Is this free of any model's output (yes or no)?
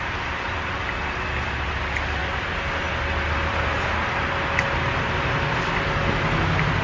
yes